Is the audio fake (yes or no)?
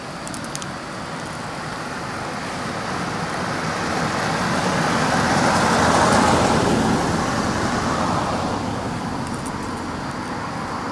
no